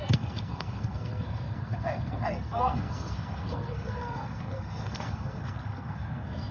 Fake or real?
fake